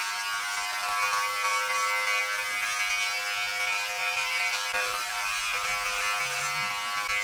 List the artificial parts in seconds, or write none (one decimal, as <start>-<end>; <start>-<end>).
4.0-5.4